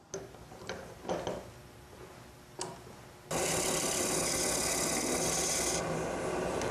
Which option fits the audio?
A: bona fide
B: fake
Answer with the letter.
A